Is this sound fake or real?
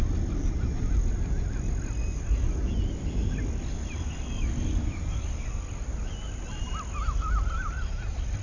real